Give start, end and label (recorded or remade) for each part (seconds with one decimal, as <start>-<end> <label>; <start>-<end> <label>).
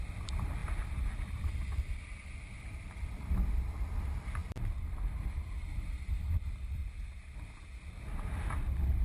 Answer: 0.0-6.8 remade; 6.8-9.0 recorded